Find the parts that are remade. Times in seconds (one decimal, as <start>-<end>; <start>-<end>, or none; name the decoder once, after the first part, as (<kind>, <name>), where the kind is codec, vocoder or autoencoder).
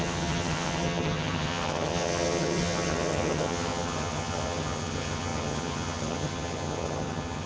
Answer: 0.0-7.5 (vocoder, HiFi-GAN)